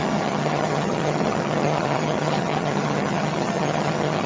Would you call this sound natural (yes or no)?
no